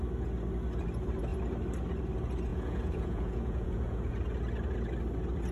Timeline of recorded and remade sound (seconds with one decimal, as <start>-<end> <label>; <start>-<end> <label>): 0.0-2.5 recorded; 2.5-4.1 remade; 4.1-5.5 recorded